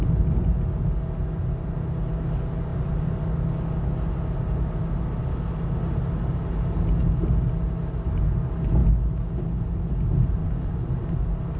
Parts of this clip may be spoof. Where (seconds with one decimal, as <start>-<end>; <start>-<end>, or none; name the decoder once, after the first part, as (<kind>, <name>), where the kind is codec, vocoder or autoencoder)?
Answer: 2.7-3.2 (vocoder, BigVGAN v2); 10.4-10.9